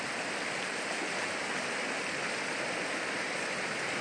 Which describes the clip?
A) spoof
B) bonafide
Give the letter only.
B